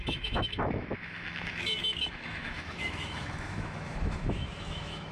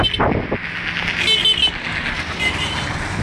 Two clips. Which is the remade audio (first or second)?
first